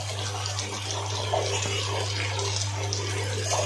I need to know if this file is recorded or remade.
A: recorded